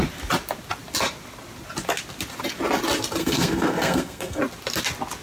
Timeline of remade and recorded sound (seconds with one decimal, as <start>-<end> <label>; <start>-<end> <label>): 0.0-3.2 recorded; 3.2-4.4 remade; 4.4-5.2 recorded